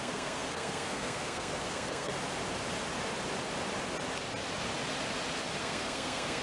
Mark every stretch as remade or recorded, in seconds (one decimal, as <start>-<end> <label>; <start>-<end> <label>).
0.0-2.1 remade; 2.1-5.6 recorded; 5.6-6.4 remade